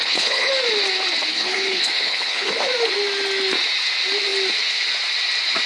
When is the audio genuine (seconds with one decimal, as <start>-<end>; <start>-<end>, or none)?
0.5-1.3; 2.5-5.7